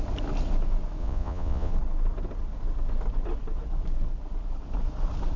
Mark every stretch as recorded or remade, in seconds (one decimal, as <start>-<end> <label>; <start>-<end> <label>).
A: 0.0-1.0 recorded; 1.0-1.7 remade; 1.7-5.4 recorded